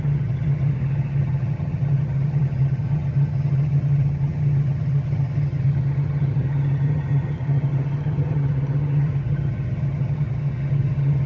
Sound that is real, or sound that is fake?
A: fake